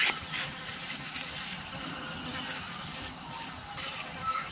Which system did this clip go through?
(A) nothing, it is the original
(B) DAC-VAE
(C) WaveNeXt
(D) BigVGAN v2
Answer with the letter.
A